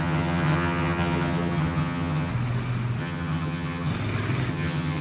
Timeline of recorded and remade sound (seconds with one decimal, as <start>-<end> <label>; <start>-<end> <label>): 0.0-2.3 remade; 2.3-3.0 recorded; 3.0-3.9 remade; 3.9-4.5 recorded; 4.5-5.0 remade